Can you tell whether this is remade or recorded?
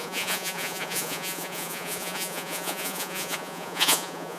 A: remade